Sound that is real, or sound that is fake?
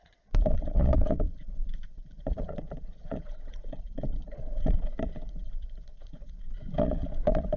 fake